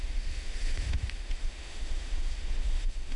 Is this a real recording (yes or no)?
no